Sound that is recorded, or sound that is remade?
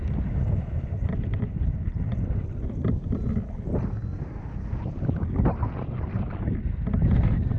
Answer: recorded